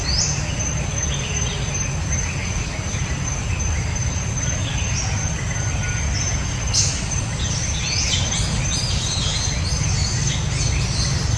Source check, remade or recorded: recorded